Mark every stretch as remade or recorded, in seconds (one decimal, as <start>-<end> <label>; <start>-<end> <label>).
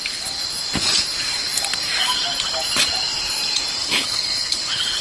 0.0-3.8 recorded; 3.8-5.0 remade